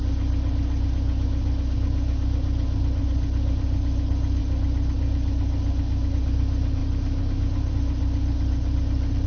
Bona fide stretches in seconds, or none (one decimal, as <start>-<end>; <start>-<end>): 0.0-9.3